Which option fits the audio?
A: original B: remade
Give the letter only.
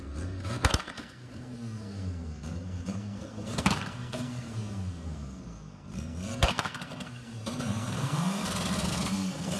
B